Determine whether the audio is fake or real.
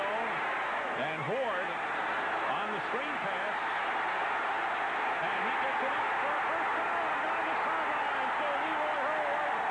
real